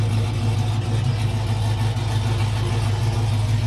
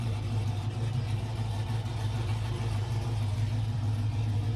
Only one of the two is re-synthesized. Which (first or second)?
second